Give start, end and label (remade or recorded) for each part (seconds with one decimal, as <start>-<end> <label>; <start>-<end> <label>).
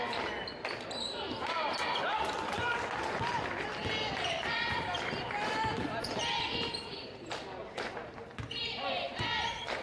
0.0-3.8 remade; 3.8-4.3 recorded; 4.3-9.8 remade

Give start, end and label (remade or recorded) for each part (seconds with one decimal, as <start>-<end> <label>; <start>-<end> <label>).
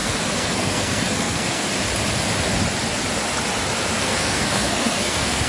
0.0-1.6 remade; 1.6-4.0 recorded; 4.0-5.5 remade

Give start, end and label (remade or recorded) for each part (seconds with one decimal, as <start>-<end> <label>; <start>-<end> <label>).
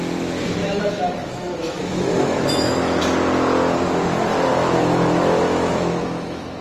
0.0-0.6 recorded; 0.6-3.0 remade; 3.0-4.5 recorded; 4.5-6.6 remade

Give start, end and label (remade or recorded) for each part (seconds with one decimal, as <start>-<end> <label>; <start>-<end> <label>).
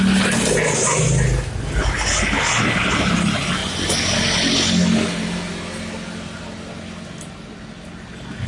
0.0-8.5 recorded